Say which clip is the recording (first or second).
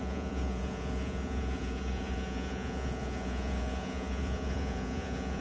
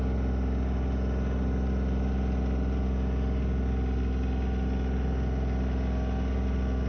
second